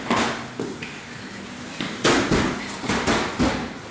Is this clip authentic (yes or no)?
yes